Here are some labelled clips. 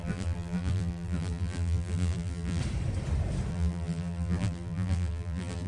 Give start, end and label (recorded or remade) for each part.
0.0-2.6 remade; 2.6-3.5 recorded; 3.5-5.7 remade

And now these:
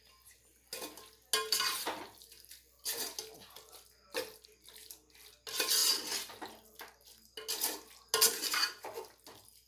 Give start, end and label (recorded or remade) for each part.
0.0-9.7 recorded

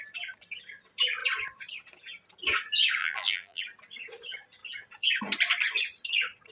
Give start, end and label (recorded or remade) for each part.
0.0-3.0 recorded; 3.0-3.6 remade; 3.6-6.5 recorded